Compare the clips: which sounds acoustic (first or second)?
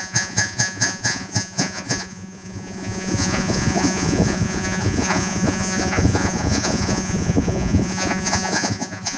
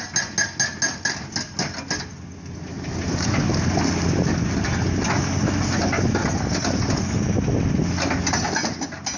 second